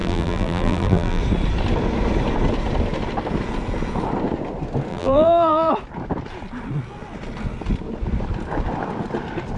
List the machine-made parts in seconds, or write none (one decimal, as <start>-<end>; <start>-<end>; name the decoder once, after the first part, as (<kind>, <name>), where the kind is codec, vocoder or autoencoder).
0.0-1.2 (vocoder, BigVGAN v2); 4.9-5.7